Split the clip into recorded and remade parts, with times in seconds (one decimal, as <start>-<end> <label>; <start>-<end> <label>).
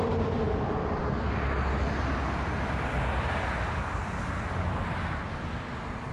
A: 0.0-6.1 recorded